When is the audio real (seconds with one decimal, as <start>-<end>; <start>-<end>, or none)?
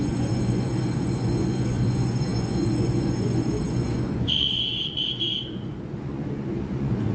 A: none